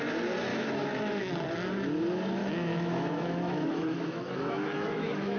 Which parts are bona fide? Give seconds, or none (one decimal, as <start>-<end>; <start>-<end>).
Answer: 0.0-0.5; 1.3-2.4